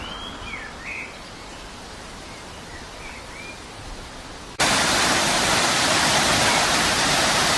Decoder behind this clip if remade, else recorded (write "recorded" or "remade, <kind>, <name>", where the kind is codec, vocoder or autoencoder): recorded